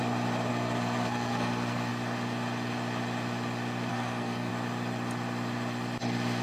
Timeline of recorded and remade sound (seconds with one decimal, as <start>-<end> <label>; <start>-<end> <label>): 0.0-0.5 recorded; 0.5-1.9 remade; 1.9-3.9 recorded; 3.9-4.5 remade; 4.5-6.4 recorded